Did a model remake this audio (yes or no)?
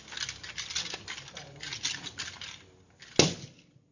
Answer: no